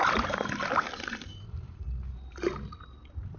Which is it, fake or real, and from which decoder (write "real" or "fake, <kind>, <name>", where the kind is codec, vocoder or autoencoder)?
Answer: real